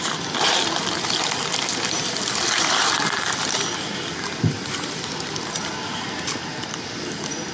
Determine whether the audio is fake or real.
real